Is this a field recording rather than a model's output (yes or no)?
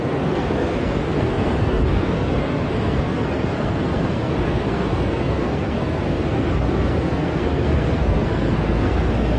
no